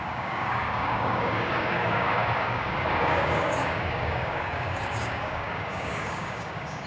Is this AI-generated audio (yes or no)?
yes